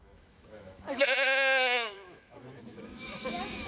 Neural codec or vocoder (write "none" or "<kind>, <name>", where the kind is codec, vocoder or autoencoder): autoencoder, DAC-VAE